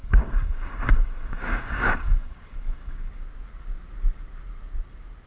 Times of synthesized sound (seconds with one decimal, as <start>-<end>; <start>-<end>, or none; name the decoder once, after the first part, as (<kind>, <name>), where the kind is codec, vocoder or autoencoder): 0.0-3.2 (codec, DAC)